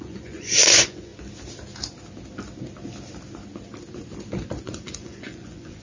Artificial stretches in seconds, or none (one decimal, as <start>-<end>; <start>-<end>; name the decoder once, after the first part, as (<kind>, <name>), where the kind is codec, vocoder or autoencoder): 0.0-1.1 (vocoder, Vocos); 4.6-5.8